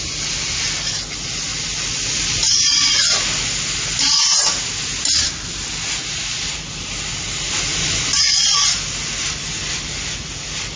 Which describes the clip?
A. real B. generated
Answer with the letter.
A